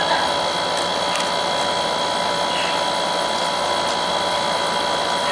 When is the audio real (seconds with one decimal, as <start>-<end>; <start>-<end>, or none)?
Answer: 0.0-5.3